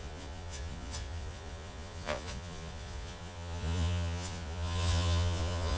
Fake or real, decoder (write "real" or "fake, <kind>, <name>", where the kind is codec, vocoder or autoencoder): fake, vocoder, Vocos